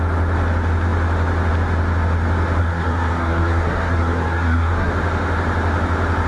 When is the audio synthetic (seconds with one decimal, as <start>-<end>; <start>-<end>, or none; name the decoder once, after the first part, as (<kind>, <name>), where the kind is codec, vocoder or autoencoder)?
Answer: 2.6-4.9 (codec, SNAC)